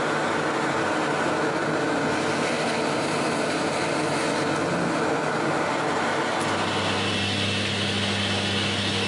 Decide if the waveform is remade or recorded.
recorded